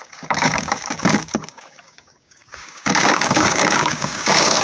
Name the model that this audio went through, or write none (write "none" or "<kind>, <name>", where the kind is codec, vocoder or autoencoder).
codec, DAC